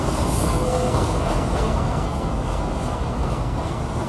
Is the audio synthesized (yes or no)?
yes